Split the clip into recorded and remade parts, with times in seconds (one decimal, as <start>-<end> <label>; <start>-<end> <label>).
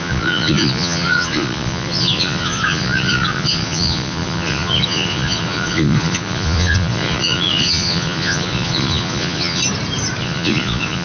0.0-9.6 remade; 9.6-10.2 recorded; 10.2-11.0 remade